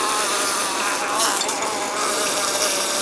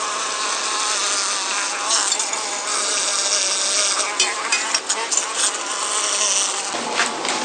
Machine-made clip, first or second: first